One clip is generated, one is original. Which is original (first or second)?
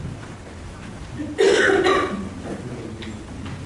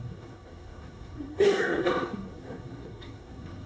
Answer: first